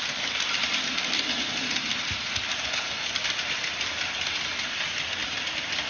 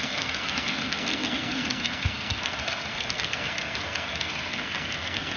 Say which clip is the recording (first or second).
first